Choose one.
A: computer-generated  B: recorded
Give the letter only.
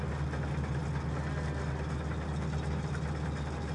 B